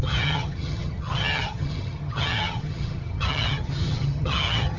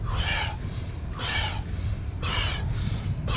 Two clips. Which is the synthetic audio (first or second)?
first